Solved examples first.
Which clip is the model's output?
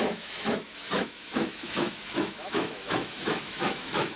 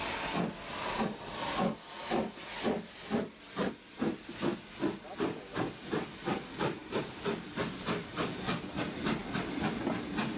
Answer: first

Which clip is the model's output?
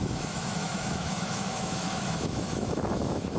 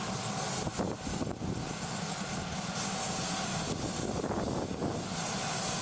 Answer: first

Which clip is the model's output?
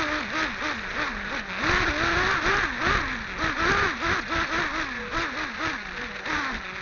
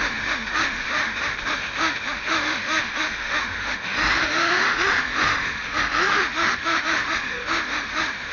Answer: second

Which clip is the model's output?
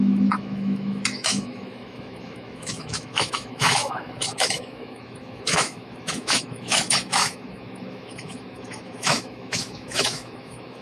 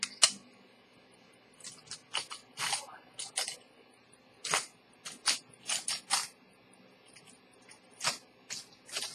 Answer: first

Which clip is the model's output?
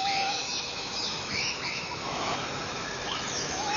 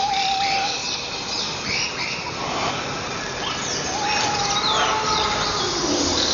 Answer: first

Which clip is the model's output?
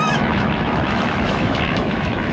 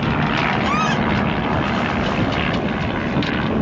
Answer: first